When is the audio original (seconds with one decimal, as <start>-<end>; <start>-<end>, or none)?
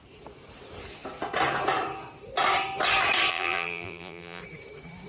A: 0.0-3.3; 4.4-5.1